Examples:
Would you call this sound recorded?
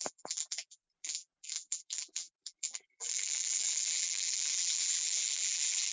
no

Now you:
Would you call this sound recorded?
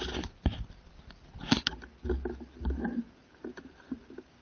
yes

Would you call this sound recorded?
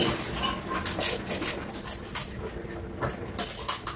yes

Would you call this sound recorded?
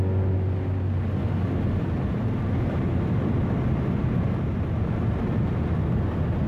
yes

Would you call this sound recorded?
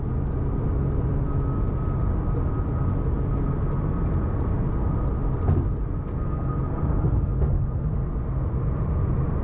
yes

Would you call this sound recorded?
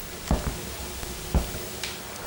yes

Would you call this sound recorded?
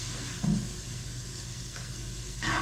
no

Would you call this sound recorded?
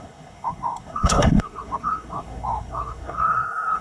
no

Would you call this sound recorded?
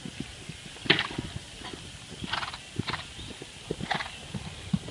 yes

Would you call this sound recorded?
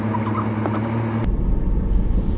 yes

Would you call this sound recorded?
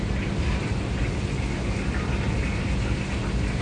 yes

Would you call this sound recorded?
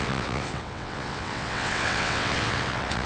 no